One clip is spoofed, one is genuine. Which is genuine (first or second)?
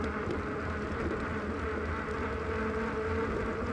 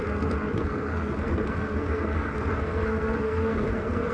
first